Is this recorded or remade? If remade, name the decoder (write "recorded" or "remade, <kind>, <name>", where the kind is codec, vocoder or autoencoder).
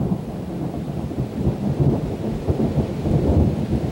recorded